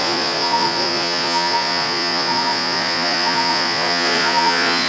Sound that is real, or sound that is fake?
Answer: fake